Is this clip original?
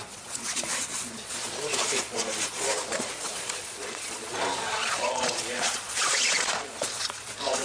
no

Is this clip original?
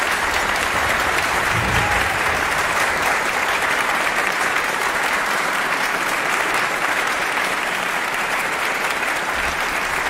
no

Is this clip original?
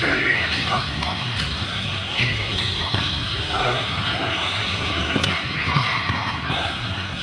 no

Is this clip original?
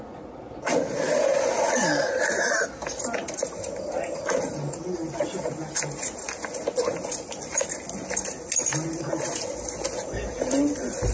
yes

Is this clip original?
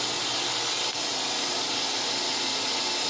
yes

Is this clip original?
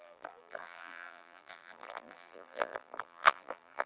no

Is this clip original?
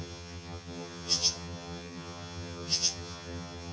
no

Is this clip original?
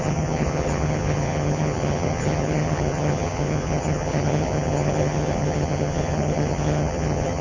no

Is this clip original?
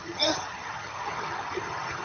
no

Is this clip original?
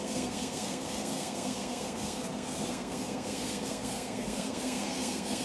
no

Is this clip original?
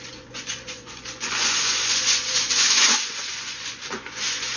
no